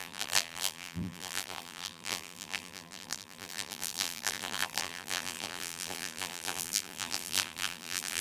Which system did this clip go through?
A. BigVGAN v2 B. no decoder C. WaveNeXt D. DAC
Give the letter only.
A